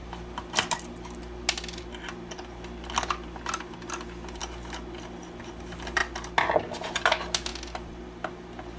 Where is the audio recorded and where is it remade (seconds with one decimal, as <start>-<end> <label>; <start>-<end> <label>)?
0.0-1.8 remade; 1.8-7.5 recorded; 7.5-8.3 remade; 8.3-8.8 recorded